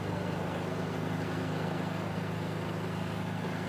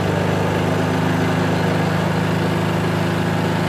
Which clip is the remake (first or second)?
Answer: first